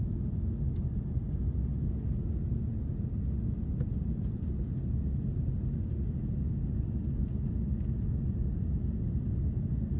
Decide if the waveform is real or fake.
real